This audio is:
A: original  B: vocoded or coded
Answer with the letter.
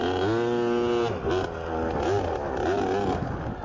A